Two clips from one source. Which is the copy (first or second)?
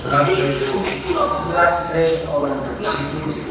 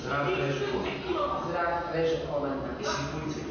first